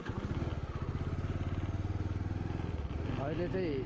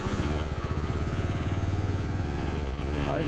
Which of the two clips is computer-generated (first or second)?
second